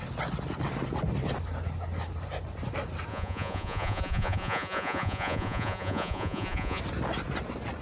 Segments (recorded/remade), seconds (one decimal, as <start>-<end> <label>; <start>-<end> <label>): 0.0-3.1 recorded; 3.1-6.8 remade; 6.8-7.8 recorded